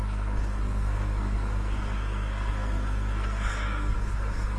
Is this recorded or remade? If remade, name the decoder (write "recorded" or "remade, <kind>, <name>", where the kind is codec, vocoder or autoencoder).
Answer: remade, codec, SNAC